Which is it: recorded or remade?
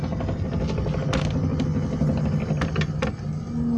recorded